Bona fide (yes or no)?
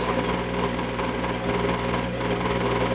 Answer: yes